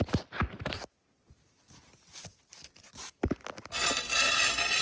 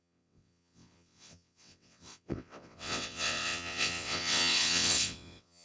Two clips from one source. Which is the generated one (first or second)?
second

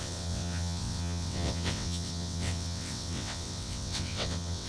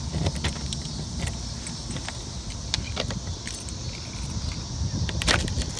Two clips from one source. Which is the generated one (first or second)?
first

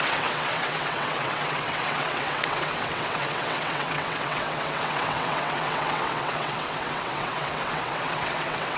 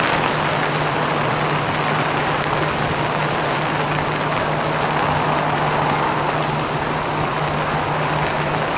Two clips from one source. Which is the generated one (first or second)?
first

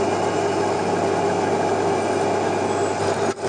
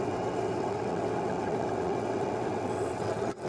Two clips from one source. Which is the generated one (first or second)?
second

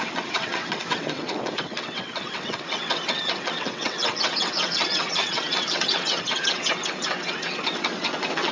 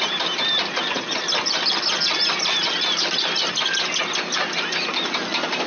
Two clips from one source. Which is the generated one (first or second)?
first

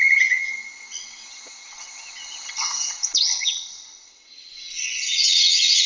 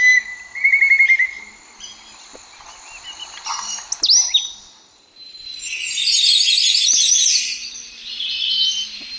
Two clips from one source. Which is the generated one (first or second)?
first